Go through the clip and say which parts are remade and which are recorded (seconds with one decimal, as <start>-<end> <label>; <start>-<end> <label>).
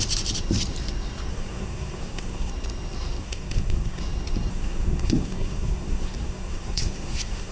0.0-1.3 recorded; 1.3-2.5 remade; 2.5-3.2 recorded; 3.2-4.0 remade; 4.0-4.5 recorded; 4.5-7.5 remade